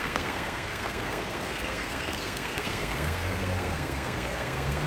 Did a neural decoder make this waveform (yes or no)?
yes